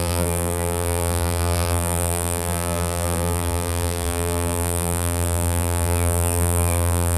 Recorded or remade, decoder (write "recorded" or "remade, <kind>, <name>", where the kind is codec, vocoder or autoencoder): remade, vocoder, BigVGAN v2